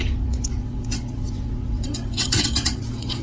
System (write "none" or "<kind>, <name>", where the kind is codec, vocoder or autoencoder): vocoder, WaveNeXt